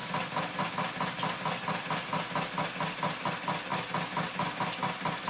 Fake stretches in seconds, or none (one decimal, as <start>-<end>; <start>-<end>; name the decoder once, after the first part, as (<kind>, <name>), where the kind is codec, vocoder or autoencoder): none